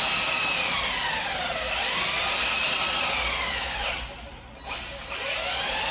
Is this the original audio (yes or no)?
yes